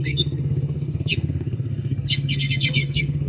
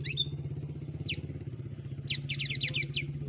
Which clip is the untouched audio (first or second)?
second